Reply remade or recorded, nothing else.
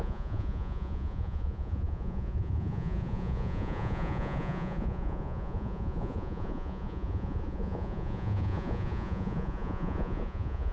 remade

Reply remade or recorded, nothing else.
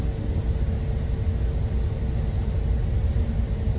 recorded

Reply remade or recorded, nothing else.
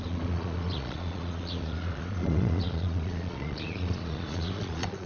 remade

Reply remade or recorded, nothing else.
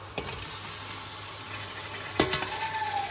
recorded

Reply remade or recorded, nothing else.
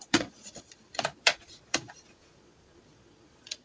remade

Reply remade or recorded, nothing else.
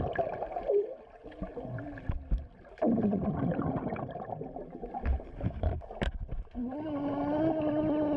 recorded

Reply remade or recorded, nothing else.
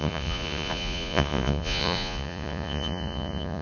remade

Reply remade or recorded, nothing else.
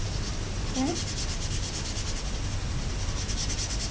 recorded